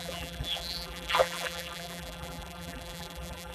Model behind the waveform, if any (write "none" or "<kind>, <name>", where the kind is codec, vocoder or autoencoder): vocoder, BigVGAN v2